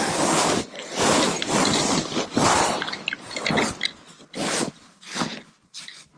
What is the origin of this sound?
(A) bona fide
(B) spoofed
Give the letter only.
A